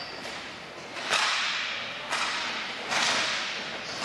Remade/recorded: recorded